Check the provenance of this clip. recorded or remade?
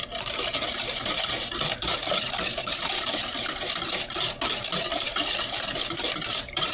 remade